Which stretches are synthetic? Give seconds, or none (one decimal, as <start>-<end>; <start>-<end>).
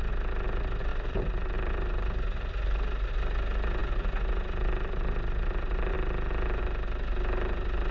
0.9-3.1